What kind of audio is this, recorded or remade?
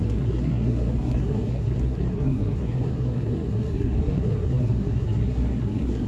remade